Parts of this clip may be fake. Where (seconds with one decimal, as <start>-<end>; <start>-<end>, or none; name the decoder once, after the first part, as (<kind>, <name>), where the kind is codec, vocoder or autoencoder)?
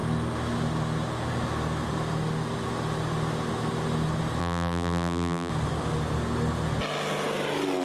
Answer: 4.4-5.5 (vocoder, BigVGAN v2)